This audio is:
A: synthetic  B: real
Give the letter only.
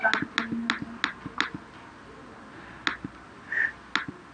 B